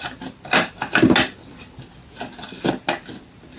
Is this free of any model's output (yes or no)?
yes